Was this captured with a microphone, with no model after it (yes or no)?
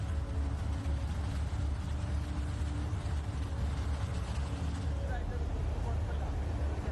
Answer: yes